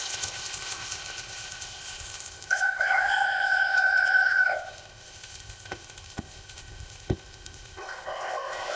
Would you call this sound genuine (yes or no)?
no